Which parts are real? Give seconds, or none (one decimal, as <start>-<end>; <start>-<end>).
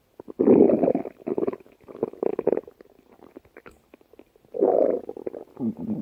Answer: 0.0-6.0